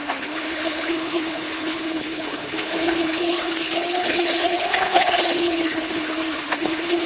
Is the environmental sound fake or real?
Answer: fake